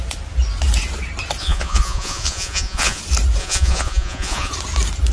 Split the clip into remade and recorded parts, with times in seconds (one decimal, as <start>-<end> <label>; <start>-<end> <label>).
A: 0.0-1.4 recorded; 1.4-3.0 remade; 3.0-3.4 recorded; 3.4-4.5 remade; 4.5-5.1 recorded